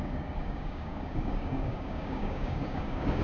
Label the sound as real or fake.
fake